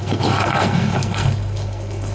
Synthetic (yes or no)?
yes